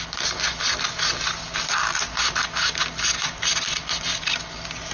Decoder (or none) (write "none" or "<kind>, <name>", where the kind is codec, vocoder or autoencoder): none